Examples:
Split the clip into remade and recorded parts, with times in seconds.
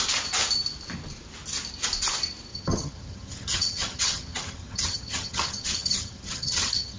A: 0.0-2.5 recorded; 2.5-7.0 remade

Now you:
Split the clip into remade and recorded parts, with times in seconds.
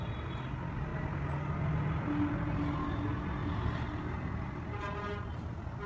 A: 0.0-5.9 recorded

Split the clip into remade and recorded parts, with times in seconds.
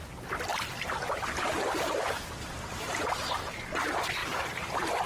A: 0.0-0.5 recorded; 0.5-2.9 remade; 2.9-4.2 recorded; 4.2-5.1 remade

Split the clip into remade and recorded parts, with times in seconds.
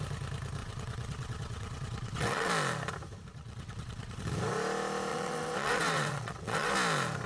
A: 0.0-0.6 recorded; 0.6-2.5 remade; 2.5-3.3 recorded; 3.3-4.2 remade; 4.2-5.1 recorded; 5.1-6.7 remade; 6.7-7.3 recorded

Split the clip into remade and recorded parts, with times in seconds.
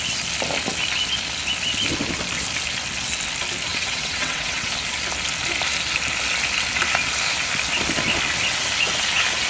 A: 0.0-3.7 recorded; 3.7-4.7 remade; 4.7-9.5 recorded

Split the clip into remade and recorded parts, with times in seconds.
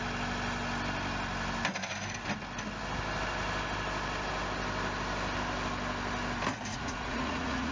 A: 0.0-6.7 recorded; 6.7-7.7 remade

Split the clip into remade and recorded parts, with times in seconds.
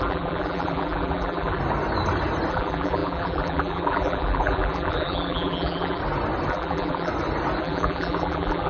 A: 0.0-1.6 remade; 1.6-2.5 recorded; 2.5-6.0 remade; 6.0-6.5 recorded; 6.5-7.1 remade; 7.1-7.6 recorded; 7.6-8.7 remade